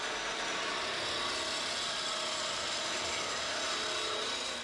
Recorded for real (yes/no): yes